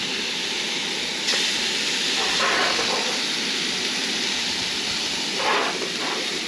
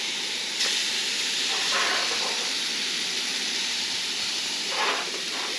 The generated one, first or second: second